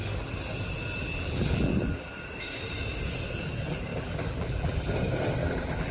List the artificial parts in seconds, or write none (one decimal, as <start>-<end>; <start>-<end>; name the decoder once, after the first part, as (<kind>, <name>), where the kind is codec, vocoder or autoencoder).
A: 1.0-2.1 (vocoder, BigVGAN v2); 3.9-4.9; 5.4-5.9